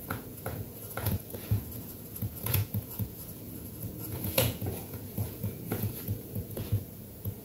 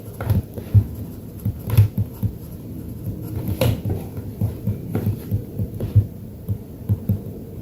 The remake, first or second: first